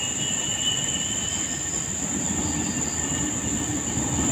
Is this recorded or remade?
recorded